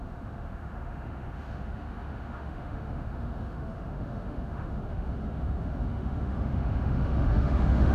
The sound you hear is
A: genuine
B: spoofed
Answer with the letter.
B